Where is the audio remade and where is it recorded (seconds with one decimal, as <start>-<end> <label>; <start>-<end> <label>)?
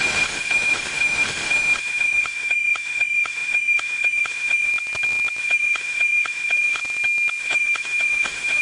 0.0-4.7 remade; 4.7-5.4 recorded; 5.4-6.8 remade; 6.8-7.4 recorded; 7.4-8.6 remade